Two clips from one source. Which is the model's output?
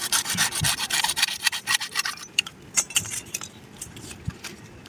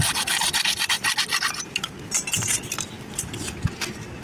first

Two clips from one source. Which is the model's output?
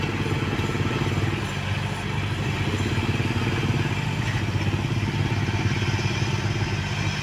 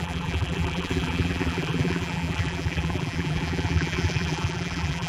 second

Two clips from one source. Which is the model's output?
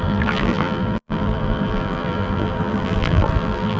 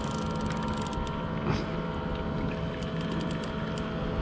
first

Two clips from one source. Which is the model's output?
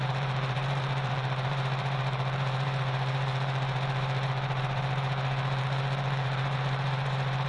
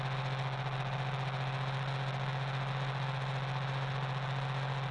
first